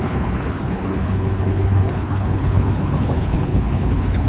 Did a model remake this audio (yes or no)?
yes